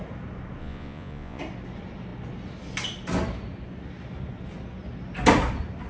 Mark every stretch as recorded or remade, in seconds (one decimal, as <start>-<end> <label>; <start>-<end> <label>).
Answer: 0.0-0.6 recorded; 0.6-1.4 remade; 1.4-5.9 recorded